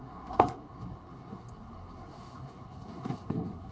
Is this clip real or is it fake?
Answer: fake